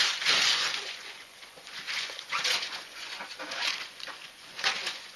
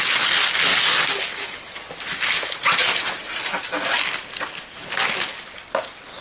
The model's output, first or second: first